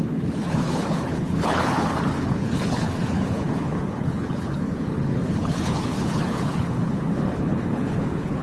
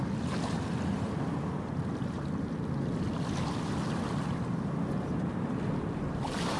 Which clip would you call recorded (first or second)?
second